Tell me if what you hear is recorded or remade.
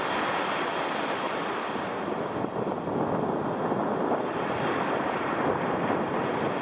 recorded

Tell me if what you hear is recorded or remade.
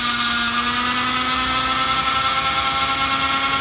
recorded